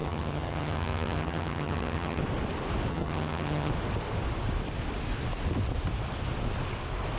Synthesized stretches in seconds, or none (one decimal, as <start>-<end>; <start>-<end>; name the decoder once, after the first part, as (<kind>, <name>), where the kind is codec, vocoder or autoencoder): 0.0-2.2 (vocoder, HiFi-GAN); 2.9-3.7